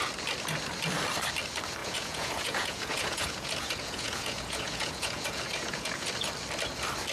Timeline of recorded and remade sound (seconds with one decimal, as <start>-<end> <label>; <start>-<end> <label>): 0.0-1.8 recorded; 1.8-6.1 remade; 6.1-7.1 recorded